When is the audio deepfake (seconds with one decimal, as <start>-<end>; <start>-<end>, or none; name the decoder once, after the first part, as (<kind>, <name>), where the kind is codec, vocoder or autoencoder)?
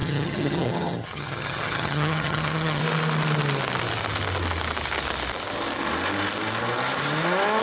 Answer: 0.0-2.8 (vocoder, HiFi-GAN)